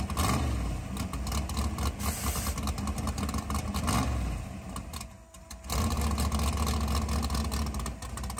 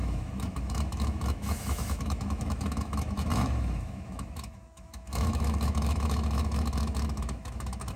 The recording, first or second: first